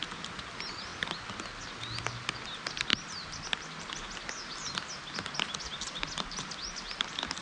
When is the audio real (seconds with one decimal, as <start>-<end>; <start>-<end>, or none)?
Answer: 0.0-7.4